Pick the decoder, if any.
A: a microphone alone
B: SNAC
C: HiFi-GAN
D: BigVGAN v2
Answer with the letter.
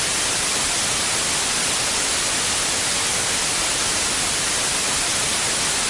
A